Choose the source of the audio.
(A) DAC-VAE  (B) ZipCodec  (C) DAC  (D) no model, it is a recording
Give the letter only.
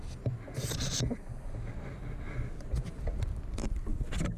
D